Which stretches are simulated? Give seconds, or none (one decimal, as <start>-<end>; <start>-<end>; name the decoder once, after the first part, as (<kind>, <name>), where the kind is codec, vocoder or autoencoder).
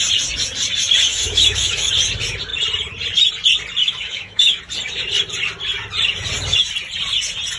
1.1-1.9 (autoencoder, DAC-VAE); 3.8-4.6